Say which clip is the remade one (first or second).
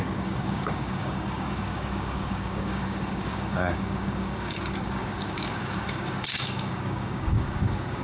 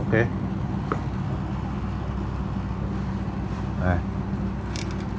first